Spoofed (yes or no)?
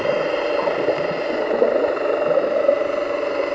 no